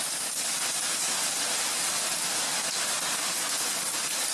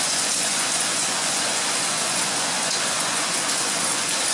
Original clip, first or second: first